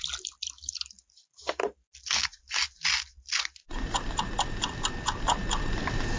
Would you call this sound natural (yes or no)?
yes